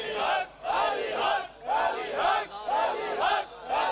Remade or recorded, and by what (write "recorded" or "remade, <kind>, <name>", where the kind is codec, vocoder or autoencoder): recorded